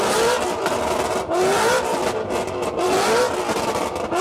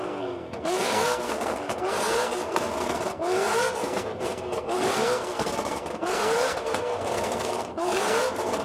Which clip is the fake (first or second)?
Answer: second